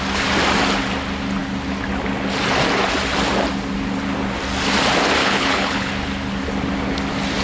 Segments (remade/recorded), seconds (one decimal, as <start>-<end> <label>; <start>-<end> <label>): 0.0-5.2 recorded; 5.2-5.9 remade; 5.9-7.4 recorded

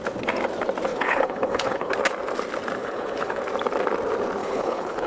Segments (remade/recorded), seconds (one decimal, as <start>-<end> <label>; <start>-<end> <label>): 0.0-0.9 recorded; 0.9-1.9 remade; 1.9-2.8 recorded; 2.8-3.4 remade; 3.4-4.4 recorded; 4.4-5.1 remade